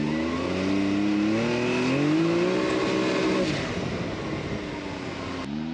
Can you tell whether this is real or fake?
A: real